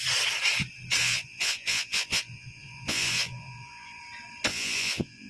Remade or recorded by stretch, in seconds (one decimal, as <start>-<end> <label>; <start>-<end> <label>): 0.0-1.0 recorded; 1.0-4.0 remade; 4.0-4.5 recorded; 4.5-5.3 remade